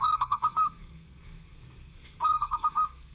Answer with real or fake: fake